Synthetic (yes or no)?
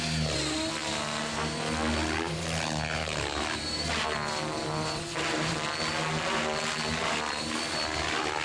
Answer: no